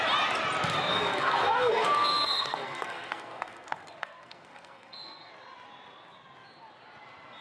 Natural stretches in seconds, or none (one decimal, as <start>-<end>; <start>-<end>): 0.0-0.9; 5.3-7.4